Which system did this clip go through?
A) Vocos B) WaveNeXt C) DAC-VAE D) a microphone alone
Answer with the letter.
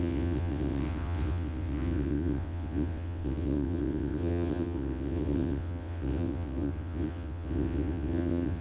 B